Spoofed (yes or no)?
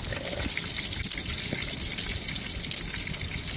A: no